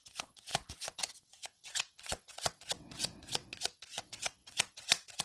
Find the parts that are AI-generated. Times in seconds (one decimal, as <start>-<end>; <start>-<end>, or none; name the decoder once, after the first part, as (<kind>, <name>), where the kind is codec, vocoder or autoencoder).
0.0-5.2 (vocoder, WaveNeXt)